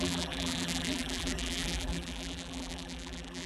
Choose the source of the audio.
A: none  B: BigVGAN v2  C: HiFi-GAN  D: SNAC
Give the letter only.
B